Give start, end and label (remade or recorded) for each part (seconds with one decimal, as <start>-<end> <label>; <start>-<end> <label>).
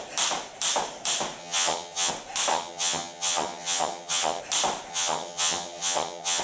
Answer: 0.0-1.4 recorded; 1.4-2.1 remade; 2.1-2.5 recorded; 2.5-4.4 remade; 4.4-4.9 recorded; 4.9-6.4 remade